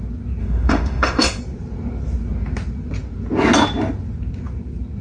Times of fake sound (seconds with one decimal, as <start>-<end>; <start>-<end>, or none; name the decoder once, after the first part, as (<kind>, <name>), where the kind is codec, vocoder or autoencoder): 0.4-1.4 (autoencoder, DAC-VAE)